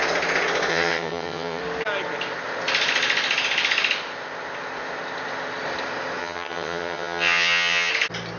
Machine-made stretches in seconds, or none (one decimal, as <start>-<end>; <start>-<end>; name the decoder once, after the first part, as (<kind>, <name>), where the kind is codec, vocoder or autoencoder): 0.7-1.6 (vocoder, HiFi-GAN); 6.2-7.9